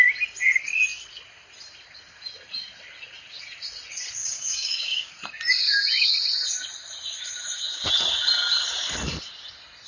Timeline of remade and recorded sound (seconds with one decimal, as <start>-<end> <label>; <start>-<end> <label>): 0.0-4.2 recorded; 4.2-5.1 remade; 5.1-9.9 recorded